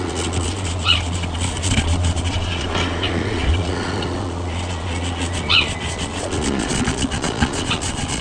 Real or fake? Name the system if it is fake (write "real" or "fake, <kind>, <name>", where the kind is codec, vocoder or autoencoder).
fake, vocoder, Vocos